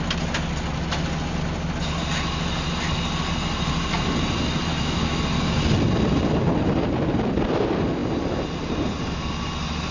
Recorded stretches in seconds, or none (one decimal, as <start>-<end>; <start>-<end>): 0.0-4.7; 5.2-9.9